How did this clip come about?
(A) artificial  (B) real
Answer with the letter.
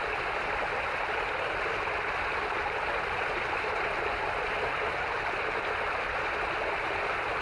B